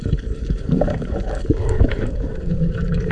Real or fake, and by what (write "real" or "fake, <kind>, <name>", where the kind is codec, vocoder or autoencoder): fake, codec, DAC